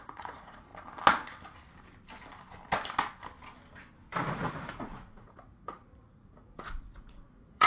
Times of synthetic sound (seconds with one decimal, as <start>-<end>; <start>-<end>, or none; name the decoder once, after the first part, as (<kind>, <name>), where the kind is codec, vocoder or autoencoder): 0.0-0.7 (vocoder, Vocos); 4.3-7.7